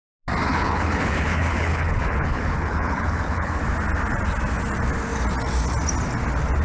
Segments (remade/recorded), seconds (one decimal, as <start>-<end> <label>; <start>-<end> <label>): 0.0-0.5 recorded; 0.5-3.6 remade; 3.6-6.6 recorded